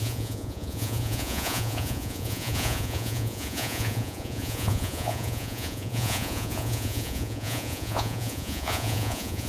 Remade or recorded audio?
remade